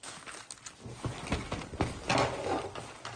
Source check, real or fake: real